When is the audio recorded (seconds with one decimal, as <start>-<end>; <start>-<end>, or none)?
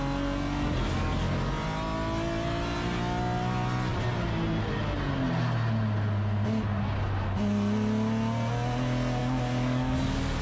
0.0-9.2